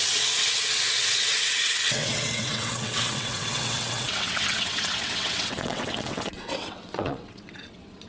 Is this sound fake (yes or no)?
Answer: yes